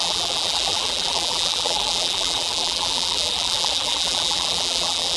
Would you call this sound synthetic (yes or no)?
yes